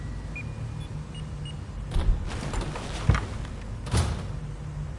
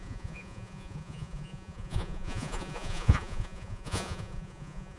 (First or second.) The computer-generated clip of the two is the second